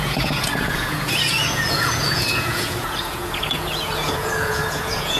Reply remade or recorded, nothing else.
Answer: remade